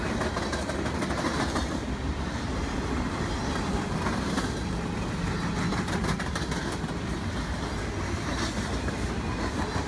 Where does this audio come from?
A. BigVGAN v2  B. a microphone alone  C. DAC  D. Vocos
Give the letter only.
B